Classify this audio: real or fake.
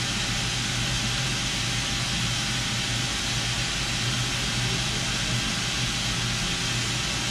real